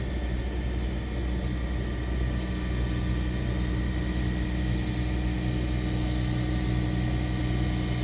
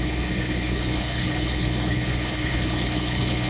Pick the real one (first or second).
first